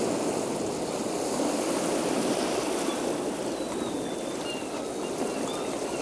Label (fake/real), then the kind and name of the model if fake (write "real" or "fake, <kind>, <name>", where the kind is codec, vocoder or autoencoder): real